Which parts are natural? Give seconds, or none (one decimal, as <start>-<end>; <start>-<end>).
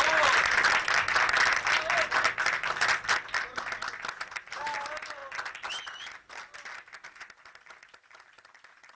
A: 0.0-8.9